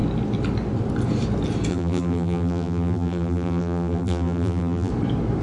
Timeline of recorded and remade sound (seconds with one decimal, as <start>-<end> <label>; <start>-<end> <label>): 0.0-1.7 recorded; 1.7-4.9 remade; 4.9-5.4 recorded